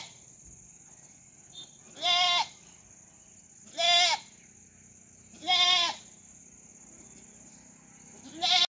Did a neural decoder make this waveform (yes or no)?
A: no